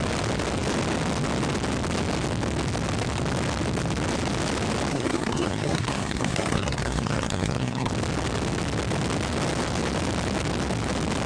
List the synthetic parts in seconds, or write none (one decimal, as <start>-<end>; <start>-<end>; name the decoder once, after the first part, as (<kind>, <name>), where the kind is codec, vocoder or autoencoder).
4.9-7.9 (codec, SNAC)